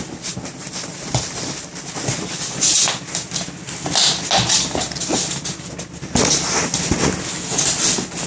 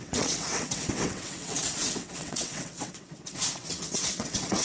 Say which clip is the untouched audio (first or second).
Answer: first